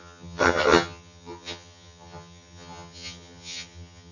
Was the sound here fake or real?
fake